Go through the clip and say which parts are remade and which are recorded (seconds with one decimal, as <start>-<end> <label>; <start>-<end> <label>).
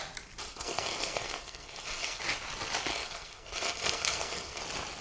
0.0-0.4 recorded; 0.4-2.2 remade; 2.2-2.9 recorded; 2.9-4.6 remade; 4.6-5.0 recorded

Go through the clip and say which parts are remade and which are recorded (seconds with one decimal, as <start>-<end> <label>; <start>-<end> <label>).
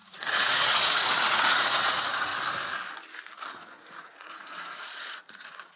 0.0-2.3 remade; 2.3-3.5 recorded; 3.5-5.8 remade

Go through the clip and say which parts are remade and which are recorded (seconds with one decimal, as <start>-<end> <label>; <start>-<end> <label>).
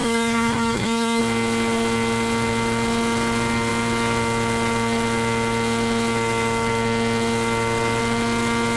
0.0-1.2 remade; 1.2-8.8 recorded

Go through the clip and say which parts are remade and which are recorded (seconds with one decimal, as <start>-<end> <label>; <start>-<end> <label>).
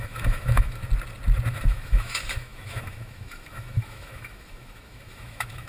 0.0-0.8 remade; 0.8-1.5 recorded; 1.5-5.7 remade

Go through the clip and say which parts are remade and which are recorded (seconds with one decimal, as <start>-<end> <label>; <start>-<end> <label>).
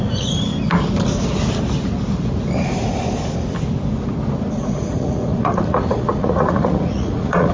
0.0-0.5 remade; 0.5-4.5 recorded; 4.5-7.5 remade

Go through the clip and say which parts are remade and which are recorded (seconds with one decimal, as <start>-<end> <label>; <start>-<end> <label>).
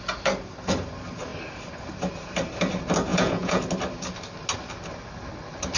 0.0-3.1 recorded; 3.1-3.6 remade; 3.6-5.8 recorded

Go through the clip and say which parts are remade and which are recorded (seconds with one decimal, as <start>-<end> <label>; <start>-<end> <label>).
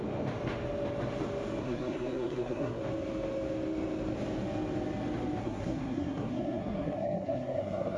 0.0-1.6 recorded; 1.6-2.8 remade; 2.8-5.4 recorded; 5.4-8.0 remade